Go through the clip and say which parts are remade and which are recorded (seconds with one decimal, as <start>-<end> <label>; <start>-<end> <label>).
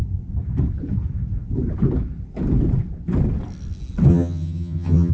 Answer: 0.0-4.1 recorded; 4.1-5.1 remade